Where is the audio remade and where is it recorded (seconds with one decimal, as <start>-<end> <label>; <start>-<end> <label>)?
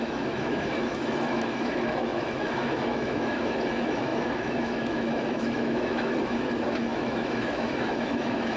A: 0.0-8.6 remade